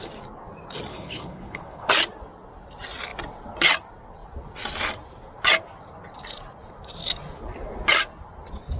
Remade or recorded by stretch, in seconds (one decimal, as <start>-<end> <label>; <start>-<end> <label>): 0.0-0.9 recorded; 0.9-1.9 remade; 1.9-8.8 recorded